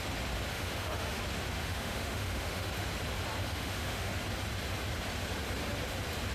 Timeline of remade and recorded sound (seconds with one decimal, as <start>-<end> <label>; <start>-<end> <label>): 0.0-0.5 recorded; 0.5-1.2 remade; 1.2-1.6 recorded; 1.6-2.7 remade; 2.7-3.4 recorded; 3.4-4.1 remade; 4.1-6.3 recorded